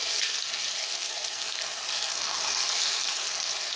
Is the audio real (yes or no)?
no